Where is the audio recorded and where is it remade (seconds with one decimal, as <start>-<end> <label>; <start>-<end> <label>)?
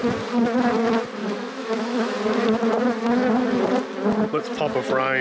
0.0-1.2 recorded; 1.2-2.2 remade; 2.2-5.2 recorded